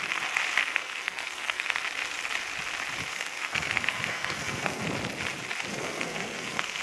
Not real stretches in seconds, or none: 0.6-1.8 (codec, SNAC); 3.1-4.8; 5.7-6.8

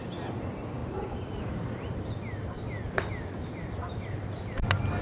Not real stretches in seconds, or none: none

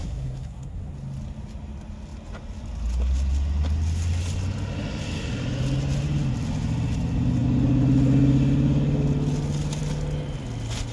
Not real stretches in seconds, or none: 0.0-0.9 (codec, SNAC)

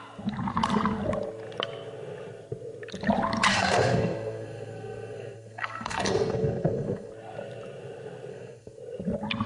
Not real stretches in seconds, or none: 3.5-7.1 (codec, SNAC); 8.3-8.8